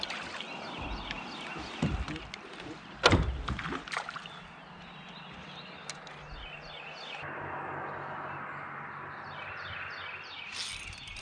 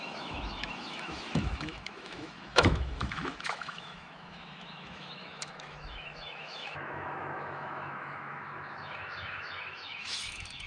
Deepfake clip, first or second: second